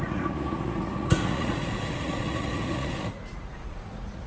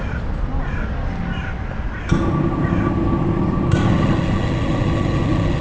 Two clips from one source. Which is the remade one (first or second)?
first